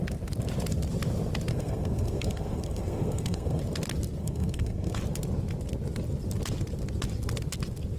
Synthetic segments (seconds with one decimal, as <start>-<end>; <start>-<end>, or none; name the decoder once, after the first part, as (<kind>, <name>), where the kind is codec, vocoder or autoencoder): 1.5-3.6 (codec, SNAC); 4.2-5.0